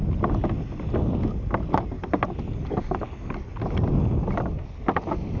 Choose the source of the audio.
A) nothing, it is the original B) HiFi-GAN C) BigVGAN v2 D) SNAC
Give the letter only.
A